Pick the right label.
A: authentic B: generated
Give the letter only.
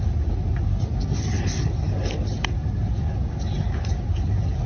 A